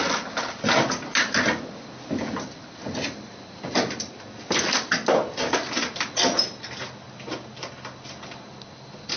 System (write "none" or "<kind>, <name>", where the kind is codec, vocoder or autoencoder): none